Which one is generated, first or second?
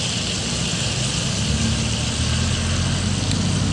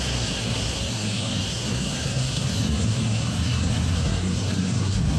second